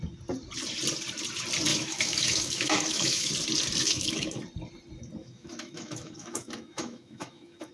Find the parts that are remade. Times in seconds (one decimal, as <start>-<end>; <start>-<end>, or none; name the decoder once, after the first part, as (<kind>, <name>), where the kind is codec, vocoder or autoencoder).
1.7-3.3 (autoencoder, DAC-VAE); 3.8-4.4; 5.2-7.7